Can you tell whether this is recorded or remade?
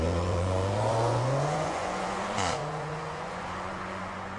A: remade